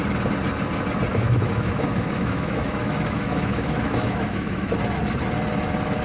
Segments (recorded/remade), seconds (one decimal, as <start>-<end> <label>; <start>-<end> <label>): 0.0-1.1 recorded; 1.1-4.7 remade; 4.7-6.0 recorded